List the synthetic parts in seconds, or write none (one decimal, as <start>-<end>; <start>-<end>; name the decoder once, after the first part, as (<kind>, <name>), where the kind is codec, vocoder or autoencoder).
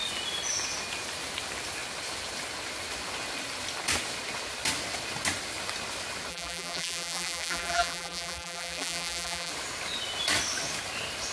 6.3-9.5 (vocoder, BigVGAN v2)